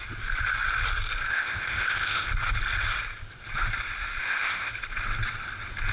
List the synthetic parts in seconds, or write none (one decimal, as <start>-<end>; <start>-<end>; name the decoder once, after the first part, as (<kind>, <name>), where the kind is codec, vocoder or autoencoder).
1.3-2.3 (codec, ZipCodec); 4.2-4.7

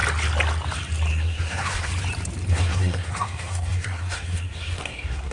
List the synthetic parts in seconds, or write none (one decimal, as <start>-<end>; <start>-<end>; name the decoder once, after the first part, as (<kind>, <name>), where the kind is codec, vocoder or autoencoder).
1.1-1.9 (codec, SNAC); 2.5-5.3

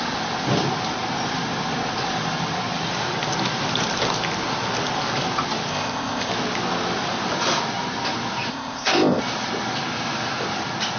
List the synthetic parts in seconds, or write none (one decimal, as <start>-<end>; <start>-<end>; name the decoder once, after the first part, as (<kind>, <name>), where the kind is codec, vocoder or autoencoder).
5.7-6.3 (codec, ZipCodec); 8.5-9.2

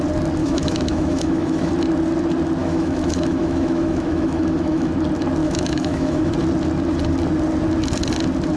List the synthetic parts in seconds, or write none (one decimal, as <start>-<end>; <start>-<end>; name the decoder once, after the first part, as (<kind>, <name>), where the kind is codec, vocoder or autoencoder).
0.4-1.7 (autoencoder, DAC-VAE); 2.6-4.9; 5.4-6.3

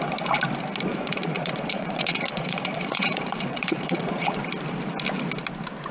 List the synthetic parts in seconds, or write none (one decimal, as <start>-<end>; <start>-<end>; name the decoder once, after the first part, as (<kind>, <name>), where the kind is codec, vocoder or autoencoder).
0.9-4.4 (vocoder, Vocos)